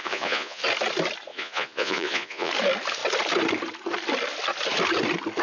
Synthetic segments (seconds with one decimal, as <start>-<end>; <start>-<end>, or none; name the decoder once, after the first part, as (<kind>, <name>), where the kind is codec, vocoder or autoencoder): 0.0-0.6 (vocoder, Vocos); 1.3-2.5